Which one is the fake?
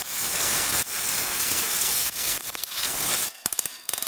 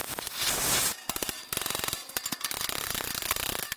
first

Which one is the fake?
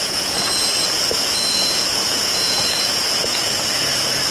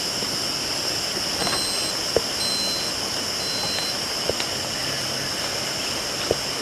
first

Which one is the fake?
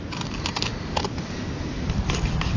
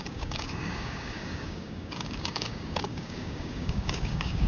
second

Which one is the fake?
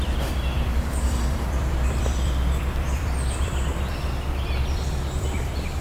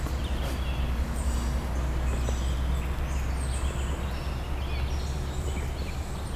first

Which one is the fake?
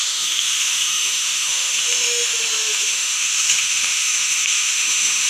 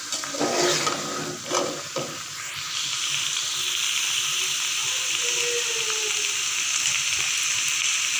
first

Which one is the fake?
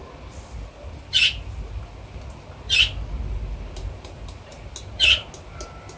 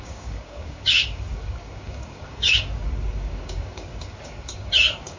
second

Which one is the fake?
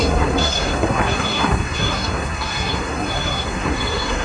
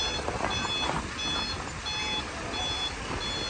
first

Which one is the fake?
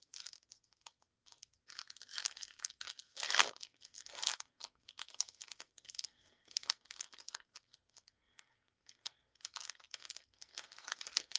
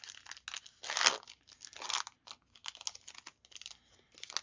first